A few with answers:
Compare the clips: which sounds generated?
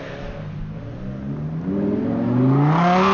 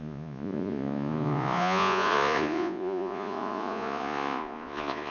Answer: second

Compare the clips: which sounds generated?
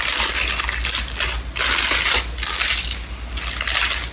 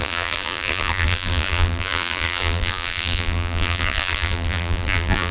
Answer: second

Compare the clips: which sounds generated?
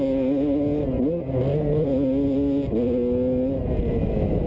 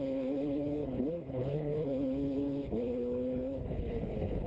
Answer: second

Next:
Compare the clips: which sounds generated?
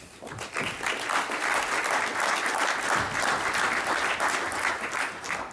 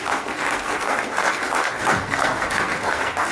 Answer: second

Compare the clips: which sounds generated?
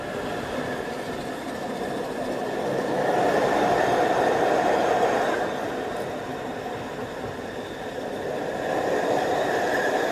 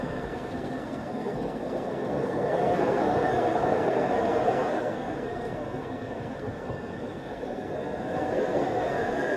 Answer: second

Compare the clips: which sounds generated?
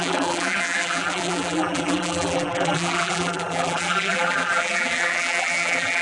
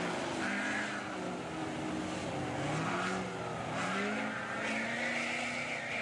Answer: first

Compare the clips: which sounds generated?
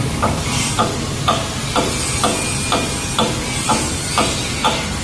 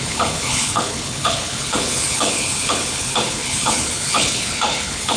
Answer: second